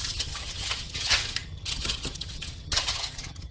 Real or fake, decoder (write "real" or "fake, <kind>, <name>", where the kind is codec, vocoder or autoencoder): fake, vocoder, HiFi-GAN